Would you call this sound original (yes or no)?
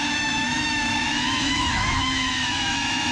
no